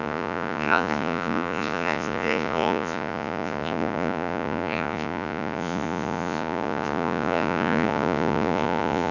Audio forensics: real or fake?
fake